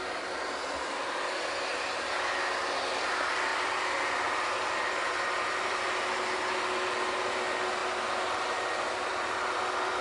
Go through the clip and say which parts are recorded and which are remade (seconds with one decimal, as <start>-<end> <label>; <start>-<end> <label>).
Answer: 0.0-10.0 recorded